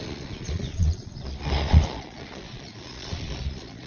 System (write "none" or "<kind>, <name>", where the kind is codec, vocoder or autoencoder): vocoder, Vocos